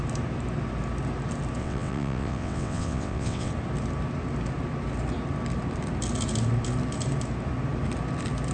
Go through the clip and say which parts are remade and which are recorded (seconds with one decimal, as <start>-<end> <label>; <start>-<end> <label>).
0.0-1.6 recorded; 1.6-3.5 remade; 3.5-8.5 recorded